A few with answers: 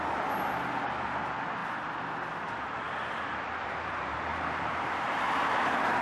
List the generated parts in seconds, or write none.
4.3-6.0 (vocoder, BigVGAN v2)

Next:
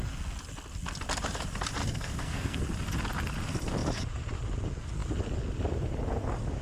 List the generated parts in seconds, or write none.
1.8-2.6 (codec, SNAC)

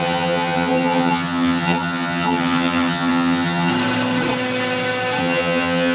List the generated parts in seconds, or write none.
0.0-3.7 (vocoder, HiFi-GAN); 5.2-5.9

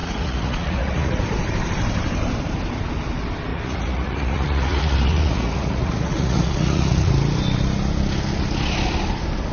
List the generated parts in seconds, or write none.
0.0-1.2 (vocoder, Vocos); 3.5-7.1

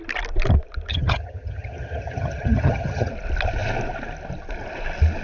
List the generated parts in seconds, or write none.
0.9-3.1 (vocoder, HiFi-GAN)

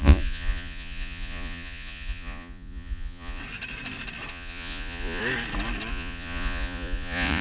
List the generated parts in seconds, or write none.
0.0-3.4 (vocoder, Vocos); 4.3-5.2; 5.9-7.4

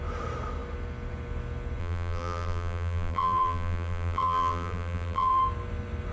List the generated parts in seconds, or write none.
1.8-5.4 (vocoder, BigVGAN v2)

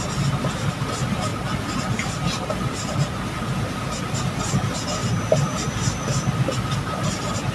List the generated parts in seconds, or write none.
none